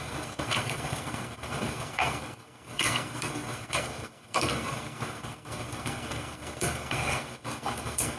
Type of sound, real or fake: fake